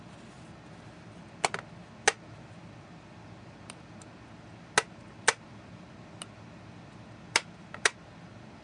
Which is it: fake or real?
real